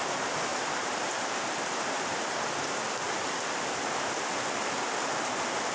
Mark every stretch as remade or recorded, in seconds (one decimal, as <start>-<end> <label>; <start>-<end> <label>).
0.0-5.7 recorded